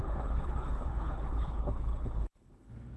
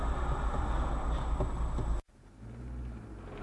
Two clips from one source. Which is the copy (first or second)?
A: first